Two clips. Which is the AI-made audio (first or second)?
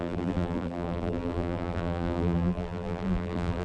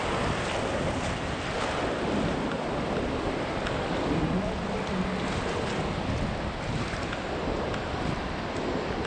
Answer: first